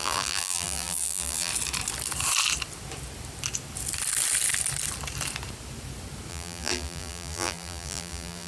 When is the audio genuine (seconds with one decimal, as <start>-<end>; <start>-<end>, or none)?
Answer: 1.5-6.3